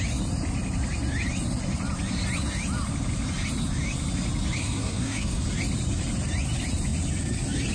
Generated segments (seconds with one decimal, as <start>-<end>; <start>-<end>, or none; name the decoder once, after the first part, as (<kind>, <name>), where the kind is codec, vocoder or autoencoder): 4.6-5.4 (codec, SNAC)